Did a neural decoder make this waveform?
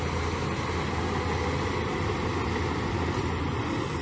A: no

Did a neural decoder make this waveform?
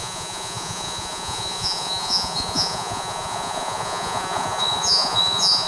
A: yes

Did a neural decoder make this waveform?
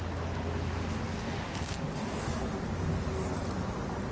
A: no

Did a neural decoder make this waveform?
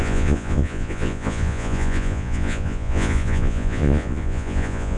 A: yes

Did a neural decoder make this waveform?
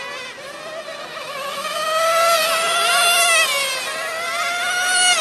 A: no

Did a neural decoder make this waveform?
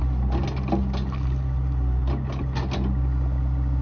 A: no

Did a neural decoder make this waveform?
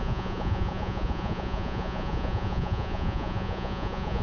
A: yes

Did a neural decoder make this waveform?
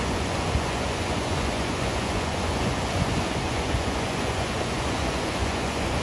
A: yes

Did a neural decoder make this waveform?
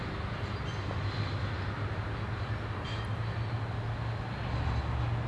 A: no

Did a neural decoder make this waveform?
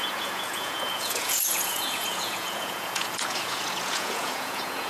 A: yes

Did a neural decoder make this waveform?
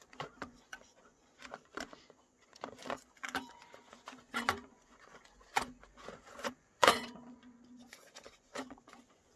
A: yes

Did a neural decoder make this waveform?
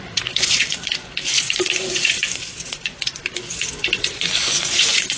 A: yes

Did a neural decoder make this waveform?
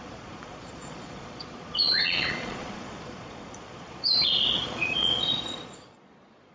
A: yes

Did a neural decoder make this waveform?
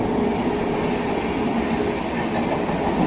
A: no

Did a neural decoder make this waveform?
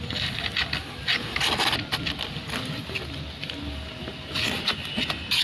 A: no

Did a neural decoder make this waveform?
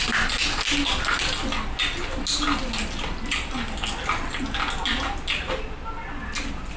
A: no